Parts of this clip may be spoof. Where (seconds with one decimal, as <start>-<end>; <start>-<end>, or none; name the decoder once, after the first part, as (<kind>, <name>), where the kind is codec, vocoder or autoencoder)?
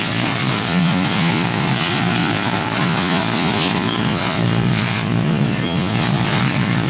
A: 0.0-6.9 (vocoder, Vocos)